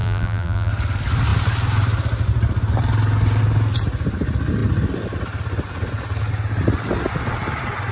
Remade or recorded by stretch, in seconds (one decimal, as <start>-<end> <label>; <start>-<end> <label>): 0.0-0.7 remade; 0.7-7.9 recorded